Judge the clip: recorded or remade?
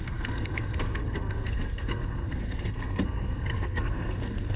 remade